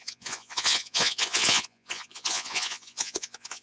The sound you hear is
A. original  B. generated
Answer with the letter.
B